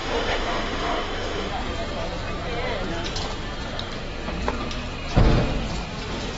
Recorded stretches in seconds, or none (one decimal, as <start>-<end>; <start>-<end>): 1.5-6.4